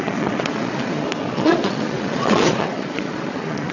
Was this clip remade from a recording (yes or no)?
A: yes